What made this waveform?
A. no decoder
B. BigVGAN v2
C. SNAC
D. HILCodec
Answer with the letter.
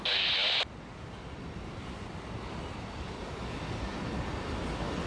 A